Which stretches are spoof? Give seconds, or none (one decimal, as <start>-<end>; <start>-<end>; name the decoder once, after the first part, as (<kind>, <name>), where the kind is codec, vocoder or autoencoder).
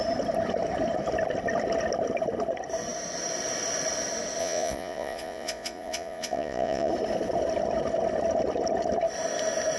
4.4-6.9 (vocoder, Vocos)